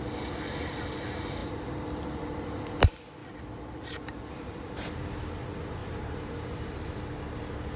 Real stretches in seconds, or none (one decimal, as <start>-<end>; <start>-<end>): 0.0-3.2; 4.9-5.8; 7.0-7.8